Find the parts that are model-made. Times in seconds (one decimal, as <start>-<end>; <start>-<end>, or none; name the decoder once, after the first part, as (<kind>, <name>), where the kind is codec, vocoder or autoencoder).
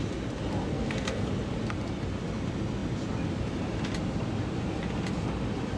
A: 0.7-1.3 (codec, SNAC)